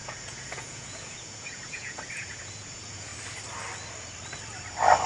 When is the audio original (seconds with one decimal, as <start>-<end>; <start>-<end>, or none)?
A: 3.1-5.1